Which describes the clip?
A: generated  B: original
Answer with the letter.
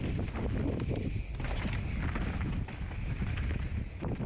B